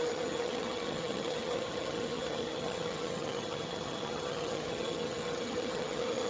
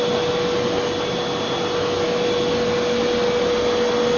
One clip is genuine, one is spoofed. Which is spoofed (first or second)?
first